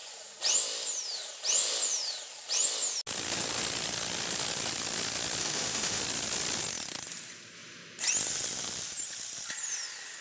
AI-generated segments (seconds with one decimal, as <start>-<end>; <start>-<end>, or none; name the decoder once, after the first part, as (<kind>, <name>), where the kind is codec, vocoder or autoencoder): 5.4-6.0 (autoencoder, DAC-VAE)